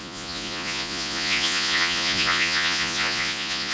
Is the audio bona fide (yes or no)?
no